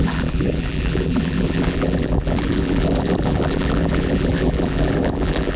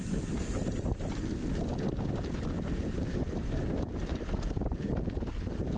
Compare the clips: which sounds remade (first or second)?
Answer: first